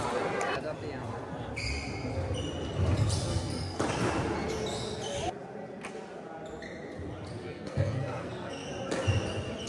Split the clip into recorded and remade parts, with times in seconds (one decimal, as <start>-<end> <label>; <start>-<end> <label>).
0.0-3.3 recorded; 3.3-3.8 remade; 3.8-7.4 recorded; 7.4-8.7 remade; 8.7-9.7 recorded